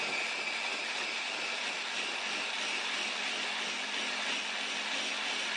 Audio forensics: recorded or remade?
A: recorded